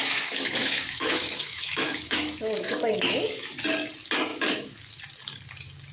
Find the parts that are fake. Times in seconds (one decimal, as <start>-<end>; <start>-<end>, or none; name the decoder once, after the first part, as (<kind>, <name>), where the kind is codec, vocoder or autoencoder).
0.0-3.5 (autoencoder, DAC-VAE); 4.3-4.9